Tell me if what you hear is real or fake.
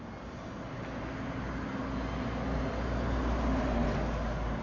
real